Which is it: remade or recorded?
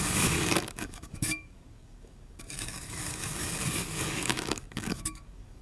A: remade